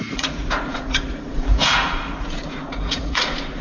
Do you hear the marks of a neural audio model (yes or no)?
yes